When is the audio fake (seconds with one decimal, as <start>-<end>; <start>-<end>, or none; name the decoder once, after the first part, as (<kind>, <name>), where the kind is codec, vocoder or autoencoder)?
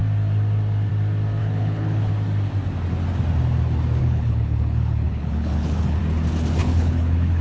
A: 1.4-2.1 (codec, HILCodec); 4.0-6.0; 6.6-7.4